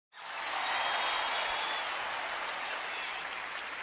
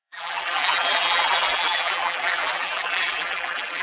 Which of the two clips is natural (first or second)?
first